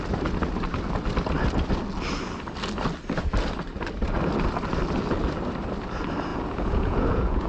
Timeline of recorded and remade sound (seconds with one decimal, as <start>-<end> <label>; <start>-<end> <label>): 0.0-6.3 recorded; 6.3-7.5 remade